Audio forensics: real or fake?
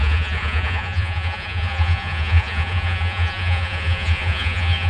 fake